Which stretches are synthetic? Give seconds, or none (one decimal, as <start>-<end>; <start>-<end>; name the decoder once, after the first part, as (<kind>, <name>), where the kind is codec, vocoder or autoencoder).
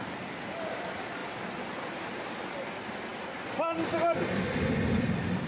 none